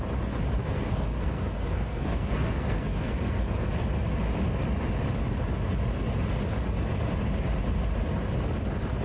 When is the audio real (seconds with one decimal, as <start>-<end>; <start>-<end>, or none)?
0.0-0.6; 3.7-9.0